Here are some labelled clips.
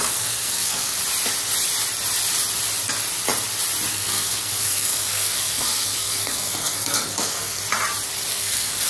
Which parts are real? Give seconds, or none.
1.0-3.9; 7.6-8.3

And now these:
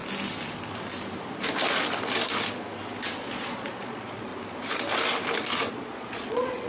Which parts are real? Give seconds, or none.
0.0-3.2; 4.3-5.7

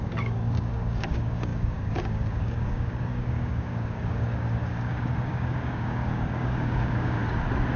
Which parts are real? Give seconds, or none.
7.2-7.8

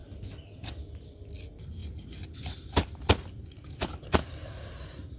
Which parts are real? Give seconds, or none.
0.0-5.2

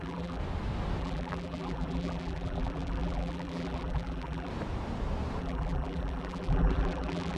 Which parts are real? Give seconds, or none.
0.4-1.0; 4.5-5.4